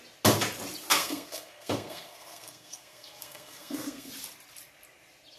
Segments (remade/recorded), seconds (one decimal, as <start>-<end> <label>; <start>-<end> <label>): 0.0-0.9 recorded; 0.9-4.1 remade; 4.1-5.4 recorded